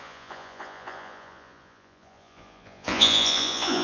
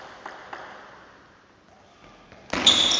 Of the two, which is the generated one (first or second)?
first